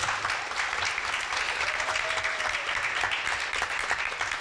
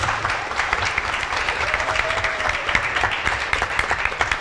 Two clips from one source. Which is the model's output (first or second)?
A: second